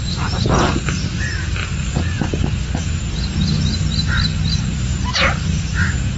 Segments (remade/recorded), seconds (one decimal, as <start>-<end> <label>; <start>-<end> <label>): 0.0-6.2 recorded